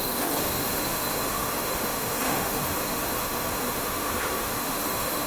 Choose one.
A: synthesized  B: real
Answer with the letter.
A